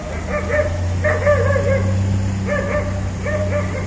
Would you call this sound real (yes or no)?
yes